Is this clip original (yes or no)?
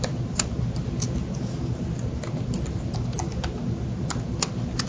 yes